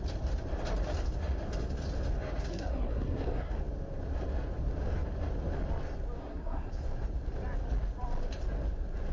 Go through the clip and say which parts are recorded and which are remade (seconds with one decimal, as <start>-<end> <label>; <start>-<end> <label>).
0.0-2.5 recorded; 2.5-3.5 remade; 3.5-6.2 recorded; 6.2-6.7 remade; 6.7-9.1 recorded